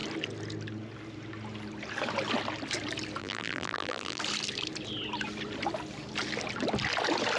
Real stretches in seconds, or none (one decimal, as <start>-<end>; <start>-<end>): 0.0-3.2; 4.2-7.4

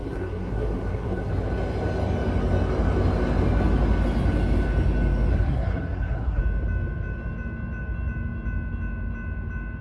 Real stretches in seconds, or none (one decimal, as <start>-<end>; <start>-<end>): 1.3-5.3; 6.4-9.8

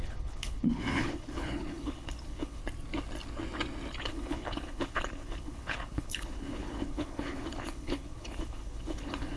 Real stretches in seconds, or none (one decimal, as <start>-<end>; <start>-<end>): 2.6-4.0

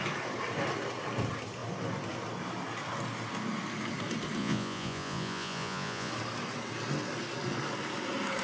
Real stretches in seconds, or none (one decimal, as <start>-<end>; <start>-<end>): 0.0-4.4; 6.1-8.4

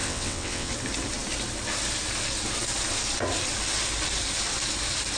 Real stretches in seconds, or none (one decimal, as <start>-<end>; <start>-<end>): 0.7-5.2